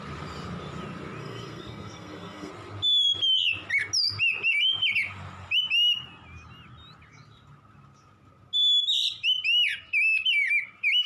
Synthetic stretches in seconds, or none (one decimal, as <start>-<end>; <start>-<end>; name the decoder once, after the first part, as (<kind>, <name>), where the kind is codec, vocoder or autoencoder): 1.2-2.5 (codec, SNAC)